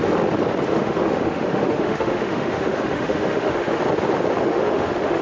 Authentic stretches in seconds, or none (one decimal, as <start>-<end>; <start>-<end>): 0.0-0.7; 3.8-4.5